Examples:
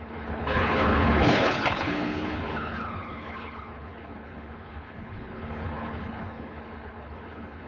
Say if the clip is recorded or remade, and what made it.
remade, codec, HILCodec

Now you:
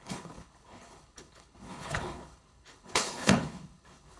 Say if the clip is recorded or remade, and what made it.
remade, codec, HILCodec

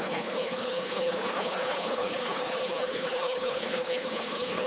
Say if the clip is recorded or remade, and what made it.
remade, codec, HILCodec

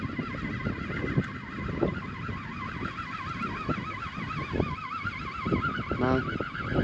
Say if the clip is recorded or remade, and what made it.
recorded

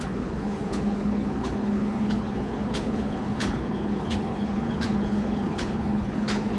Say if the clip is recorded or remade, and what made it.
remade, codec, HILCodec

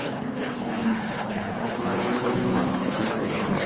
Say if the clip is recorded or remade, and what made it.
remade, codec, HILCodec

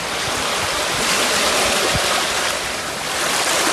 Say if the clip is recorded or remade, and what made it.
recorded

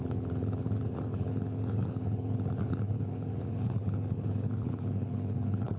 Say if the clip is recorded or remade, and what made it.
remade, codec, HILCodec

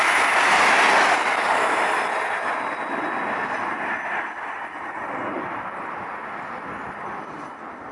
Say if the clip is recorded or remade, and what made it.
recorded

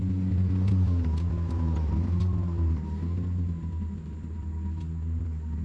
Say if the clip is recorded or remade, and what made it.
recorded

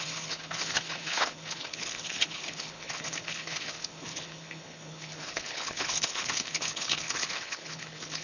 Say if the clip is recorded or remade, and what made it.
remade, codec, HILCodec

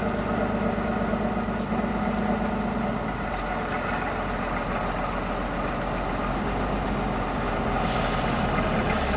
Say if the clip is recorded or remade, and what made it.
recorded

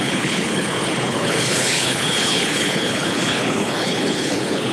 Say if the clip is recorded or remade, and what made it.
remade, codec, HILCodec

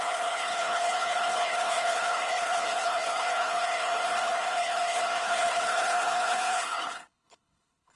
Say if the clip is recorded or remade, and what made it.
remade, codec, HILCodec